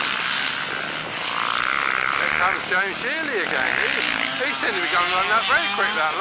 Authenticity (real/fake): real